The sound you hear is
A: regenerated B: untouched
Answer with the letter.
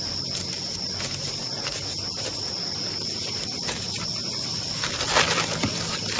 B